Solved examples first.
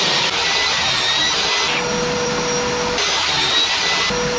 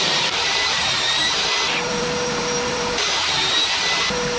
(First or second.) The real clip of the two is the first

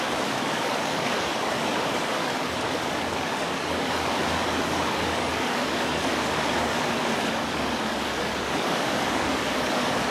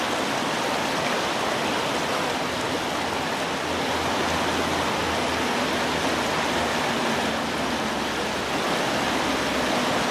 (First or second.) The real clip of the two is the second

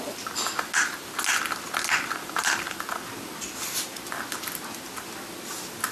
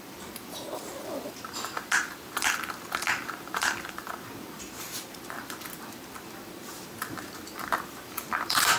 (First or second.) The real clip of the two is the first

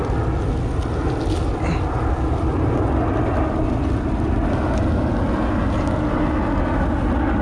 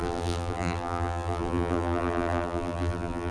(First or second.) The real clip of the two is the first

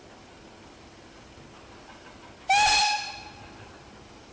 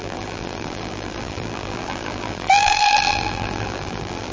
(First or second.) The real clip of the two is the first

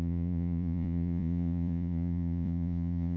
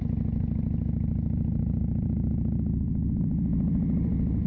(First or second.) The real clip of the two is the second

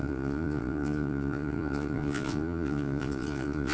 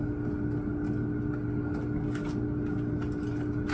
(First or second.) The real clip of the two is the second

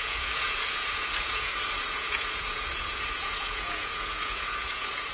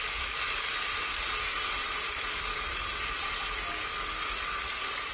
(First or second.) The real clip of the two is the second